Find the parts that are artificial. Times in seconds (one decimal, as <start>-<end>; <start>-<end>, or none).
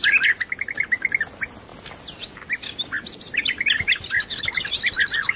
none